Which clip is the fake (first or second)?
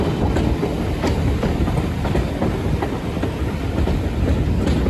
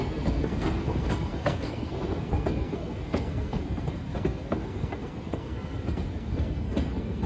second